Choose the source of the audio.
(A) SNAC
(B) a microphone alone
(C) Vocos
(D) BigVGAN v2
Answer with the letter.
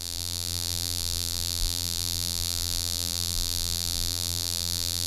D